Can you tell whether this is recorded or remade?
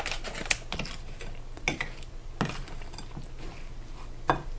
recorded